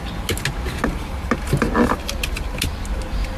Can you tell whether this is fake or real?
real